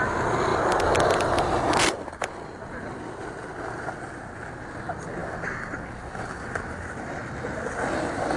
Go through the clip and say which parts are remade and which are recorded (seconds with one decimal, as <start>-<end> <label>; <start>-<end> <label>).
0.0-0.5 recorded; 0.5-4.2 remade; 4.2-8.4 recorded